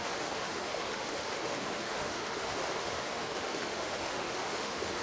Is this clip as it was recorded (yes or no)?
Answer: no